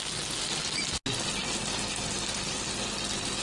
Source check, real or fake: real